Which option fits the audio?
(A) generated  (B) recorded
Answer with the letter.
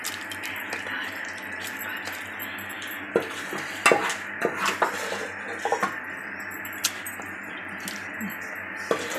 B